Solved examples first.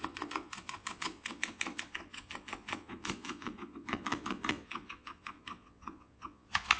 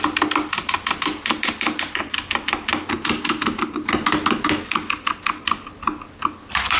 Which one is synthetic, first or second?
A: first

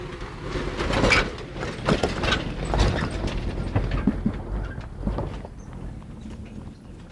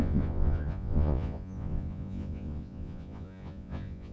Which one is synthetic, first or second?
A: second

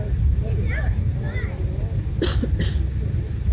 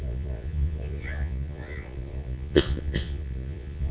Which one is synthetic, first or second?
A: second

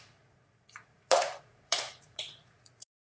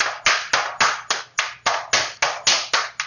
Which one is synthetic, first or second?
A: first